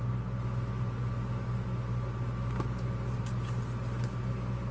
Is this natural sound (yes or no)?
yes